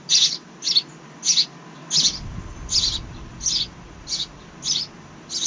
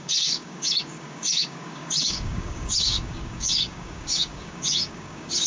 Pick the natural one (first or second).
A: first